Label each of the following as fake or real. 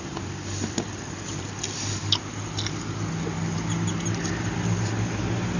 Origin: real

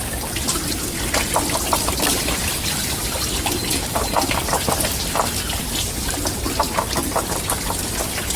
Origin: real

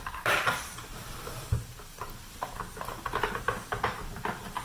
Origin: fake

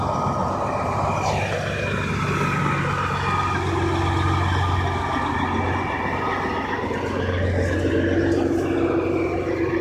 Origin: real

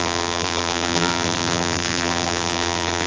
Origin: fake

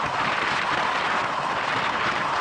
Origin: real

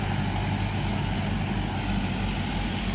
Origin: real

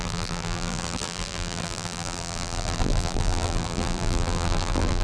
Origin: fake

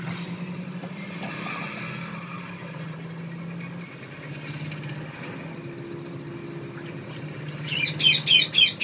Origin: real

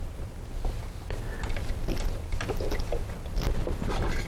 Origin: real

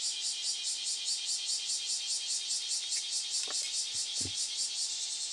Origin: real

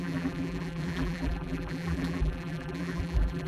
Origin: fake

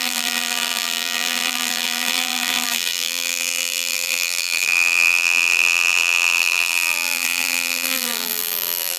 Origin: fake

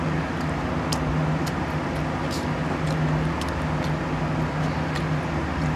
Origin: real